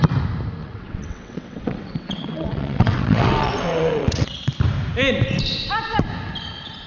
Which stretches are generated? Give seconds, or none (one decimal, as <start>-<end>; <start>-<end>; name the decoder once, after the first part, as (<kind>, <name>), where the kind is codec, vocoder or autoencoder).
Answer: 0.6-4.5 (vocoder, WaveNeXt)